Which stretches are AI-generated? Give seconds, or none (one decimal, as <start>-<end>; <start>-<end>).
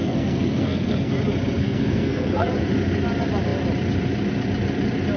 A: 0.0-1.1; 1.6-2.5